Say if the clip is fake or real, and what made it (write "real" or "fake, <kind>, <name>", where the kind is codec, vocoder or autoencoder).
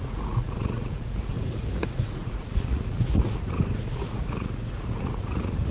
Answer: fake, vocoder, Vocos